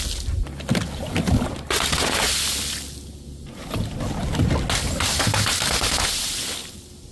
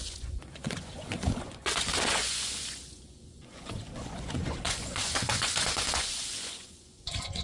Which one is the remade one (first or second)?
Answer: second